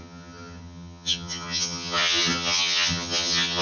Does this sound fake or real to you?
fake